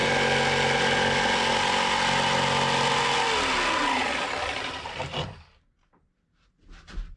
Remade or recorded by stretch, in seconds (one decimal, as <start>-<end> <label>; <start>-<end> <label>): 0.0-4.0 recorded; 4.0-4.8 remade; 4.8-7.2 recorded